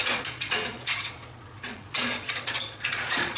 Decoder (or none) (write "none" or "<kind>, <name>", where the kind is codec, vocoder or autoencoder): vocoder, Vocos